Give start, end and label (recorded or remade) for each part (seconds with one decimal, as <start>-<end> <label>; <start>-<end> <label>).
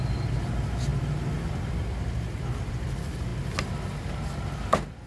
0.0-5.1 recorded